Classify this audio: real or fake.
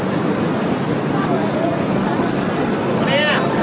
real